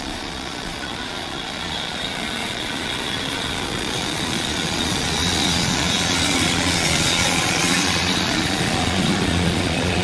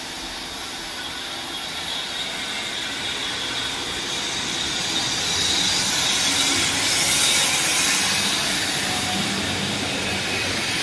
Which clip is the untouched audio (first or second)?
second